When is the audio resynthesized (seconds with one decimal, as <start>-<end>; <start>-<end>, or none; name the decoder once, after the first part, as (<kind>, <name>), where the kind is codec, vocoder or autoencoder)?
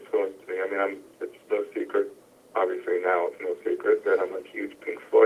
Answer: none